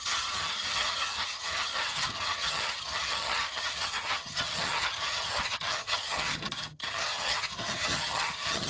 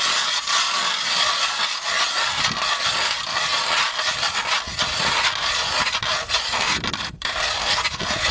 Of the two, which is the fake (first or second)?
first